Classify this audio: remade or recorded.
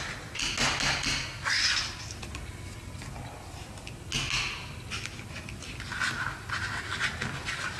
recorded